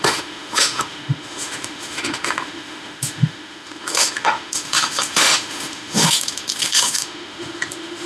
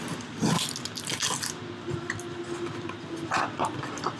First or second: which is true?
second